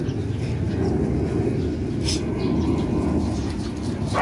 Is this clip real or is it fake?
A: real